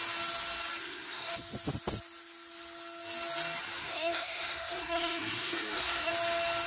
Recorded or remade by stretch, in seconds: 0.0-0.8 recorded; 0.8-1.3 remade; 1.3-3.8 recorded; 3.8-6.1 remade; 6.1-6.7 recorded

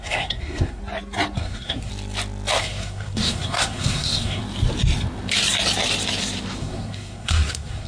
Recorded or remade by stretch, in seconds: 0.0-0.8 remade; 0.8-1.4 recorded; 1.4-1.9 remade; 1.9-2.6 recorded; 2.6-4.4 remade; 4.4-6.6 recorded; 6.6-7.9 remade

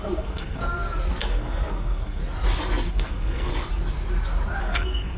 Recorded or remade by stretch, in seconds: 0.0-0.6 remade; 0.6-1.2 recorded; 1.2-2.2 remade; 2.2-2.9 recorded; 2.9-3.5 remade; 3.5-4.6 recorded; 4.6-5.2 remade